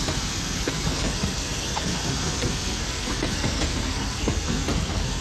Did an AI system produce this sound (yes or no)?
yes